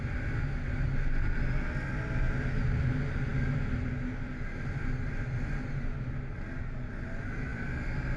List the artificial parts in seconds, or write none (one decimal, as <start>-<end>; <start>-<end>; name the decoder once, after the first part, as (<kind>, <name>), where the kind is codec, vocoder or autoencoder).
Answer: none